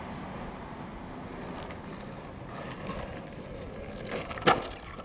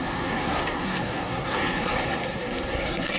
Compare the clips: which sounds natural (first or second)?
first